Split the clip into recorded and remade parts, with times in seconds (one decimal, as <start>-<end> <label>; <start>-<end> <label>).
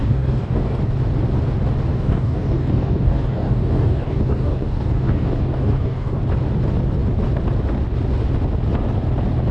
0.0-0.8 remade; 0.8-1.9 recorded; 1.9-6.2 remade; 6.2-9.5 recorded